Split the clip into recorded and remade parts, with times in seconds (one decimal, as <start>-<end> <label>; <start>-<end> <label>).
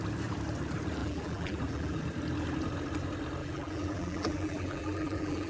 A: 0.0-1.0 recorded; 1.0-2.0 remade; 2.0-3.4 recorded; 3.4-5.5 remade